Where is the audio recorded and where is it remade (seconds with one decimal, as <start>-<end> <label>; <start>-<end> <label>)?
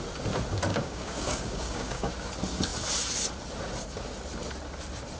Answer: 0.0-0.7 recorded; 0.7-2.1 remade; 2.1-5.2 recorded